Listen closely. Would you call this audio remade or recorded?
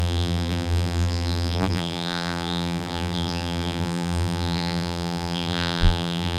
remade